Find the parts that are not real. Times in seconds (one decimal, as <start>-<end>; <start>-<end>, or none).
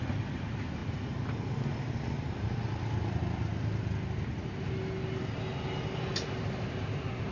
none